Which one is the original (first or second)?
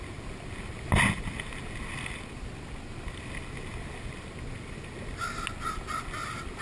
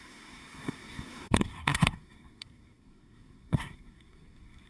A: first